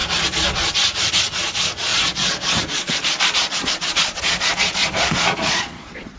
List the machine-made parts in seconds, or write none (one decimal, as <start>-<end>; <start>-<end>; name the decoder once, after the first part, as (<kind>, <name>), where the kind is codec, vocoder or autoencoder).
1.1-6.2 (vocoder, Vocos)